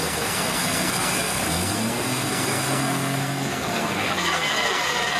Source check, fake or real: fake